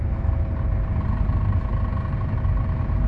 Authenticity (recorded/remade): recorded